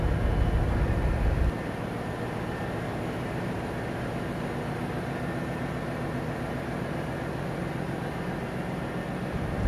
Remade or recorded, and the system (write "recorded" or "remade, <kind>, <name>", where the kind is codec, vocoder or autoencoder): recorded